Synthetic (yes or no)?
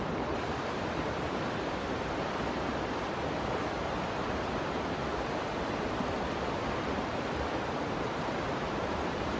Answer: yes